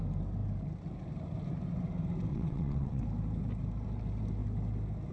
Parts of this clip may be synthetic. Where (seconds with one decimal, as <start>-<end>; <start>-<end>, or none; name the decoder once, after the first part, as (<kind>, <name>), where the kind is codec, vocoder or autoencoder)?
2.3-3.0 (vocoder, WaveNeXt)